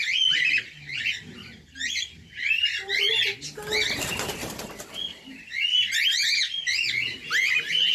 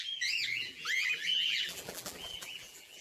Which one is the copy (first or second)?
second